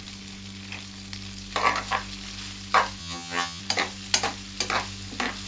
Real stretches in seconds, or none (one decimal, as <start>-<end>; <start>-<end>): 0.0-3.0; 3.6-5.5